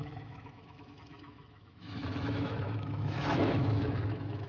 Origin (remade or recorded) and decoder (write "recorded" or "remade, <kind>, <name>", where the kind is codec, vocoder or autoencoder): remade, autoencoder, DAC-VAE